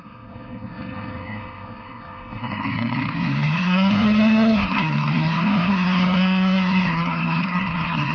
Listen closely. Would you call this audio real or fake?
fake